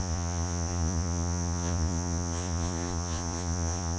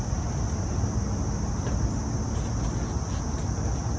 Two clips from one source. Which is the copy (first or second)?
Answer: first